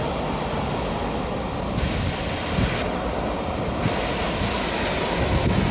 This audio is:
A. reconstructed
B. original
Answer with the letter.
B